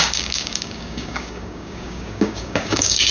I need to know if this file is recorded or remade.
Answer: remade